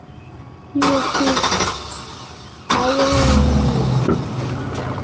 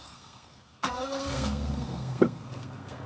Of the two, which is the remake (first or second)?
second